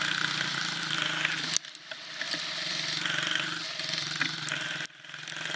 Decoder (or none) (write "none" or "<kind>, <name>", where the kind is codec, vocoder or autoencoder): vocoder, BigVGAN v2